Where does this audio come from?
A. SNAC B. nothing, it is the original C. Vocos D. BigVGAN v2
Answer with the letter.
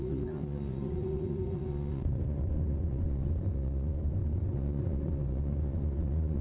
C